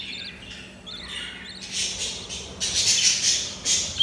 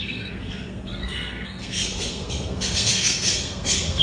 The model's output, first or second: second